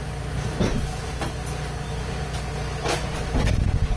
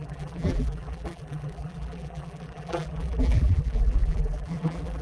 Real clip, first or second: first